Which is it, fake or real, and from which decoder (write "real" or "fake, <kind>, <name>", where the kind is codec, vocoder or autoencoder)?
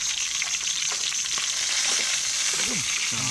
fake, vocoder, BigVGAN v2